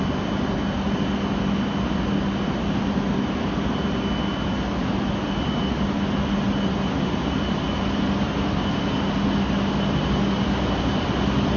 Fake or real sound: real